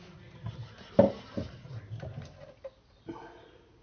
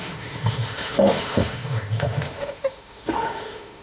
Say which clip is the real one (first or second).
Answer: first